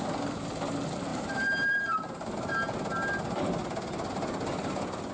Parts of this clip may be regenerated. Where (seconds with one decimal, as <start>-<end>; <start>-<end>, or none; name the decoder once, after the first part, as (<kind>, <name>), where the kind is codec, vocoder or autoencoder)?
1.1-2.6 (vocoder, BigVGAN v2)